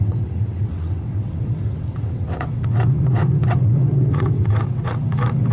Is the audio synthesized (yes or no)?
yes